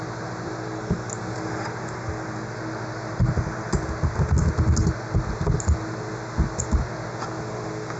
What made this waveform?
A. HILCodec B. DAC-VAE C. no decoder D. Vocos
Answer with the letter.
C